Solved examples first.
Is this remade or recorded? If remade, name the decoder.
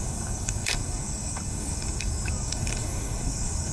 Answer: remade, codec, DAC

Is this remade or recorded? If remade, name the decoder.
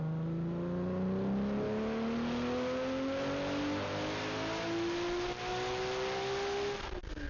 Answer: recorded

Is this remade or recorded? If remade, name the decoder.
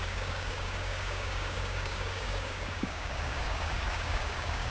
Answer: remade, codec, DAC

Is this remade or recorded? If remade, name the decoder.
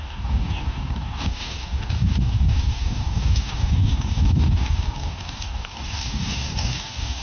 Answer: remade, codec, DAC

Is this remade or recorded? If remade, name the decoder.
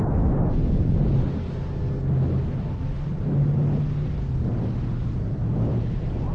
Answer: recorded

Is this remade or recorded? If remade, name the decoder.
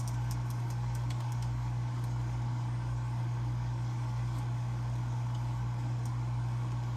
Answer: remade, codec, DAC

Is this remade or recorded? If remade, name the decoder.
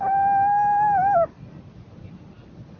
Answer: recorded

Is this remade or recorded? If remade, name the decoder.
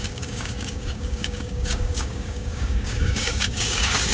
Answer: remade, codec, DAC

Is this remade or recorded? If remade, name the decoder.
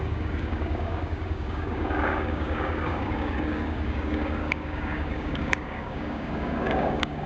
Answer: remade, codec, DAC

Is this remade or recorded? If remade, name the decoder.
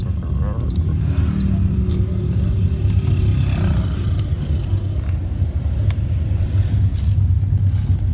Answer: recorded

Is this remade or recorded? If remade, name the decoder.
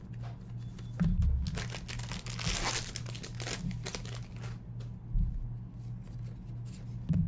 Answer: recorded